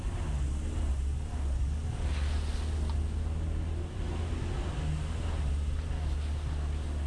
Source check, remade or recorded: recorded